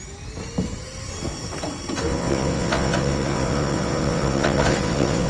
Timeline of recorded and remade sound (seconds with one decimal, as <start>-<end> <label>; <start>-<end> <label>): 0.0-2.1 recorded; 2.1-5.3 remade